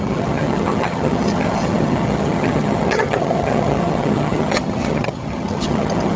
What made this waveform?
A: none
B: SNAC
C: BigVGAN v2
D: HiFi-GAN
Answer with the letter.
D